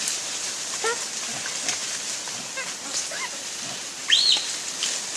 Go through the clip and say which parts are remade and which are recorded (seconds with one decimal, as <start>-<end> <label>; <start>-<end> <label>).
0.0-5.2 recorded